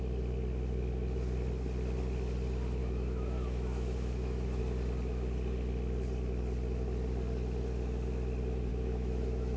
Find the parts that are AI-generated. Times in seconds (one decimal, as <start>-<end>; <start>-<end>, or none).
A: 2.8-4.6; 8.7-9.6